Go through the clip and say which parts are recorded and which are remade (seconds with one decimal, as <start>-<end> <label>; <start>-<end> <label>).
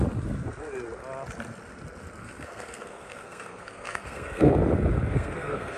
0.0-2.2 recorded; 2.2-4.5 remade; 4.5-5.1 recorded; 5.1-5.8 remade